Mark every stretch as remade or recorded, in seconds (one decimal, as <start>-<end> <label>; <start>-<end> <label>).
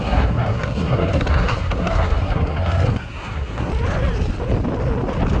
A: 0.0-3.7 remade; 3.7-5.4 recorded